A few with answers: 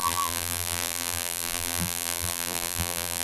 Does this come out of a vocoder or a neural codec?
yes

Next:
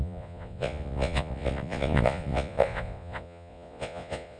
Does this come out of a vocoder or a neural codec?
yes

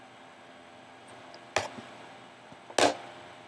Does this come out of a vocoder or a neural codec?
no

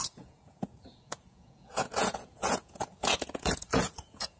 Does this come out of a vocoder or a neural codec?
yes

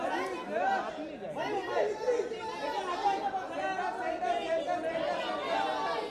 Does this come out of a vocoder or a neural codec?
no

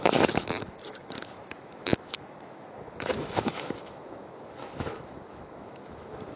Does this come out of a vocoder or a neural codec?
yes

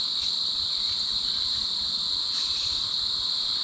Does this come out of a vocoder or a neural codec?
no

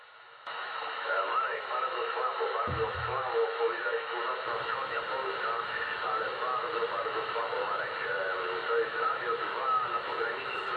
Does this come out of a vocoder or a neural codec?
yes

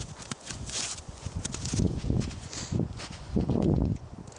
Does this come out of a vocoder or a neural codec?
yes